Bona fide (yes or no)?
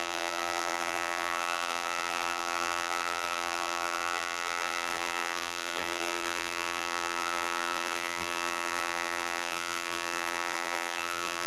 no